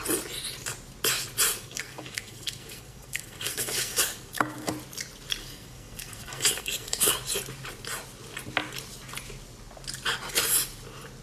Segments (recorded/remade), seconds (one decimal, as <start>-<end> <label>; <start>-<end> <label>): 0.0-1.5 recorded; 1.5-4.7 remade; 4.7-5.4 recorded; 5.4-7.1 remade; 7.1-11.2 recorded